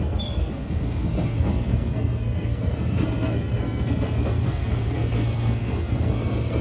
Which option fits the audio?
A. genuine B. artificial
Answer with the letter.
B